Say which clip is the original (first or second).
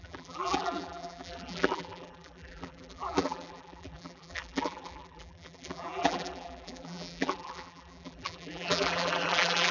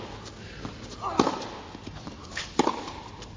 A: second